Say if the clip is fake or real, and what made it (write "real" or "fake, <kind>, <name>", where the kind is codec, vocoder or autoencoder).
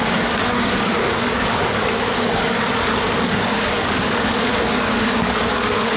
fake, codec, DAC